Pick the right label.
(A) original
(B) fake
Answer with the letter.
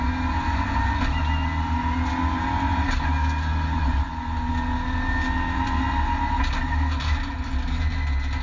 A